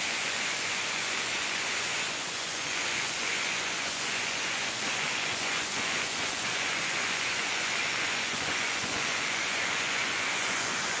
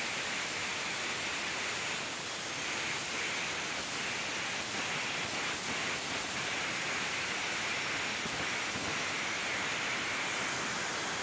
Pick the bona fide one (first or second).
second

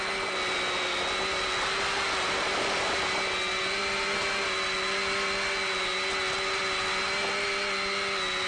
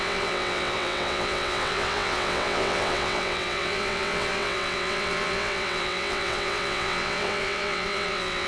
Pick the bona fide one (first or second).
first